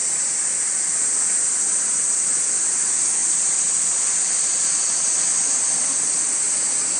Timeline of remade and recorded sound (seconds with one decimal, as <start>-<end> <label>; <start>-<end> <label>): 0.0-7.0 recorded